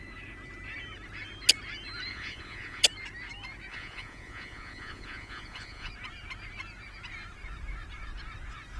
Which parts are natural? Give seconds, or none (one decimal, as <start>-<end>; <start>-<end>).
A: 0.0-2.1; 2.8-3.7; 5.9-8.8